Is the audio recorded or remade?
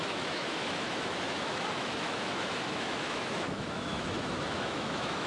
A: remade